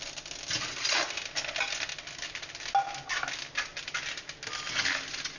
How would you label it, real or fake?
real